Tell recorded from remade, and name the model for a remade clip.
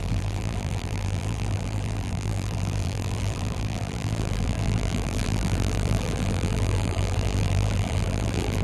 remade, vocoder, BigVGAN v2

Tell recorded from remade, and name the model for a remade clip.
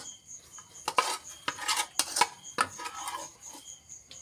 recorded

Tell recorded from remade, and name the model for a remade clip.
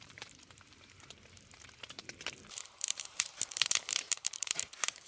remade, vocoder, BigVGAN v2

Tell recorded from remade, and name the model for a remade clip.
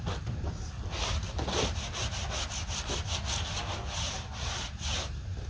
recorded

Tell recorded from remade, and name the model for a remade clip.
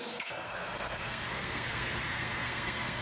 remade, codec, SNAC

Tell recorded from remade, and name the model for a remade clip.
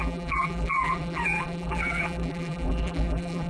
remade, vocoder, BigVGAN v2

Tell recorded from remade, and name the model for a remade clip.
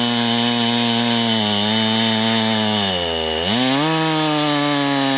recorded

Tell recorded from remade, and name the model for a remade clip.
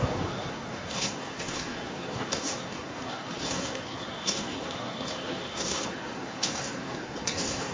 remade, codec, SNAC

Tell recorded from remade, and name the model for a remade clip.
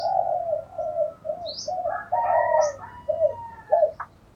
recorded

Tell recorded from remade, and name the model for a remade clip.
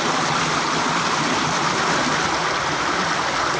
recorded